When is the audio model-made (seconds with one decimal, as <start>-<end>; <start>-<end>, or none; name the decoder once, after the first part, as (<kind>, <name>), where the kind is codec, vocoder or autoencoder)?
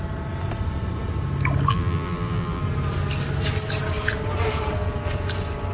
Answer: 1.7-2.6 (vocoder, BigVGAN v2)